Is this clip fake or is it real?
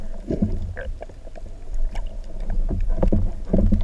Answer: real